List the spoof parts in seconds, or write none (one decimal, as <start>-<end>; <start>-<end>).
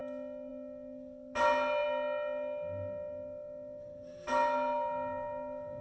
none